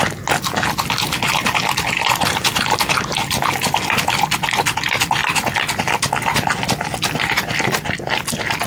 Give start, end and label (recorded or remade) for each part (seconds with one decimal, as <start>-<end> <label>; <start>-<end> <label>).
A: 0.0-8.7 recorded